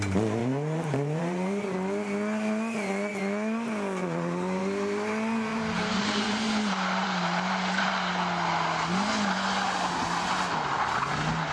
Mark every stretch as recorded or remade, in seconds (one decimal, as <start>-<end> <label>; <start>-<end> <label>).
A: 0.0-0.4 recorded; 0.4-1.6 remade; 1.6-5.5 recorded; 5.5-7.9 remade; 7.9-11.5 recorded